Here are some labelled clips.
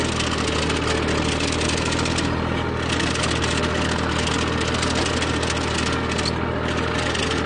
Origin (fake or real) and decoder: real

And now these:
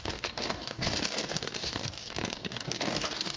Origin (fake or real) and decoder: fake, codec, DAC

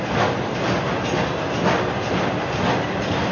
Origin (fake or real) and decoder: real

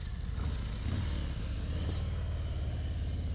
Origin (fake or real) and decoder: real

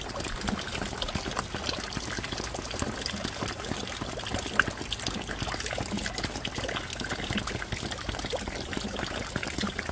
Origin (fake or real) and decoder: real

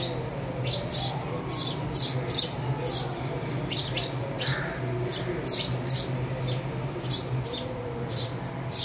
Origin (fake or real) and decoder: real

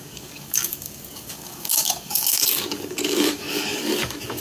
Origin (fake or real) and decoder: fake, codec, DAC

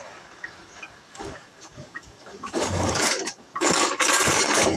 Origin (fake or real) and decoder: fake, codec, DAC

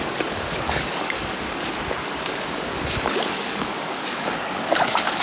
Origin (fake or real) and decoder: fake, codec, DAC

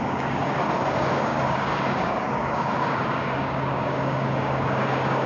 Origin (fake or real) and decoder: fake, codec, DAC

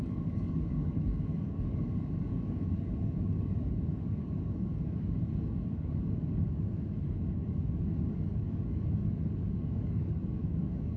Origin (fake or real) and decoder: fake, codec, DAC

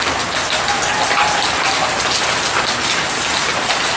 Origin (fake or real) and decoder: real